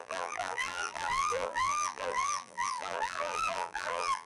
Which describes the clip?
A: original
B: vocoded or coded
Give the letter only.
B